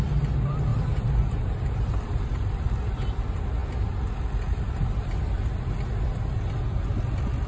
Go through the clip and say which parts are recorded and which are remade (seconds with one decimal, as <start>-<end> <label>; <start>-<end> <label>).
0.0-0.7 recorded; 0.7-2.7 remade; 2.7-7.5 recorded